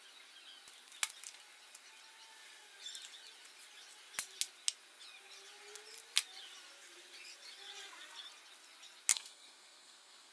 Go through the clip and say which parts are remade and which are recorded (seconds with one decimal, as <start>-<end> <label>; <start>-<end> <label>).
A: 0.0-9.1 recorded; 9.1-10.3 remade